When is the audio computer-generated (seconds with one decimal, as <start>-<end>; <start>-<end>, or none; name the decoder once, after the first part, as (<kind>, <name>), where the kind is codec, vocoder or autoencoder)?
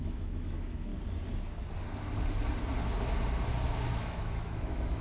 0.0-0.9 (autoencoder, DAC-VAE); 3.9-5.0